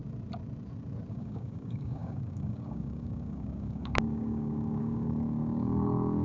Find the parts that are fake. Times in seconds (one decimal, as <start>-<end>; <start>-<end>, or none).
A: 1.1-6.2